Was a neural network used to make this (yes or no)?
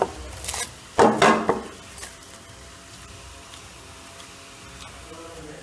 no